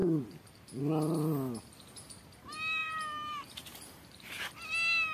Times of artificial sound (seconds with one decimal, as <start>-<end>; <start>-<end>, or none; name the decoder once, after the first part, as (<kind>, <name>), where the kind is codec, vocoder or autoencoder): 0.0-0.8 (vocoder, BigVGAN v2); 2.8-4.5